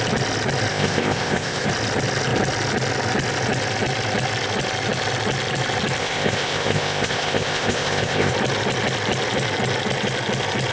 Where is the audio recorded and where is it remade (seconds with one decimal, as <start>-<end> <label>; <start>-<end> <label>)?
0.0-0.7 recorded; 0.7-1.7 remade; 1.7-6.0 recorded; 6.0-8.3 remade; 8.3-10.7 recorded